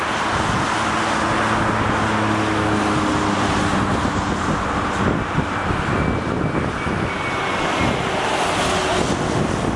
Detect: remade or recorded recorded